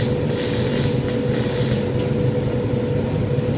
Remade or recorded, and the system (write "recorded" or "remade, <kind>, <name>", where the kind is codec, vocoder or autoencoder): recorded